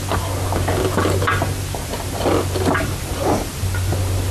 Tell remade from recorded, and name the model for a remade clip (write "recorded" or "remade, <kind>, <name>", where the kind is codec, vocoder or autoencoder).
recorded